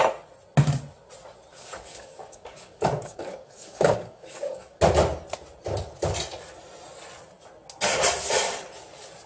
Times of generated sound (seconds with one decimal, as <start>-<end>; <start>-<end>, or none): 1.5-4.8